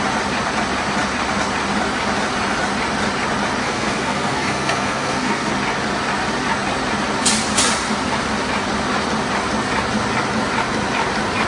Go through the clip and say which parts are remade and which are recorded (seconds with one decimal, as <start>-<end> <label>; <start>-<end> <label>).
0.0-3.6 recorded; 3.6-5.5 remade; 5.5-11.5 recorded